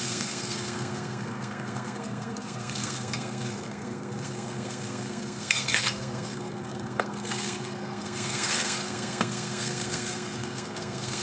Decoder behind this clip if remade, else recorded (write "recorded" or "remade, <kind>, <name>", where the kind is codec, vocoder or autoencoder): remade, codec, SNAC